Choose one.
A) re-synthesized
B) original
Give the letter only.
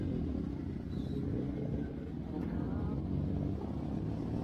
B